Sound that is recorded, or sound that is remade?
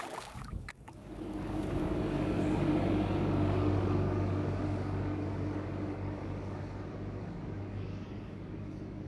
remade